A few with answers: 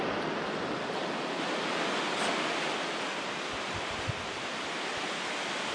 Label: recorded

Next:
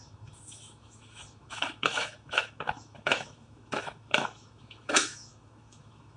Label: remade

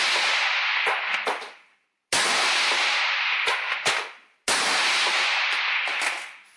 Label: recorded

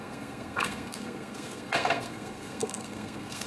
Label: remade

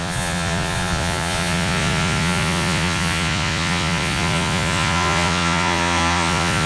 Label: remade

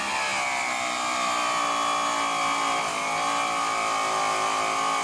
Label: recorded